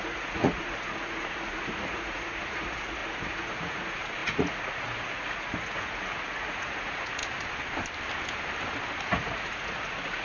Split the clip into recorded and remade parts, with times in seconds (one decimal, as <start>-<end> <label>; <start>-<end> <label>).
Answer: 0.0-7.2 remade; 7.2-9.0 recorded; 9.0-10.2 remade